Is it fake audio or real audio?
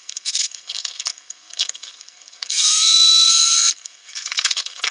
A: fake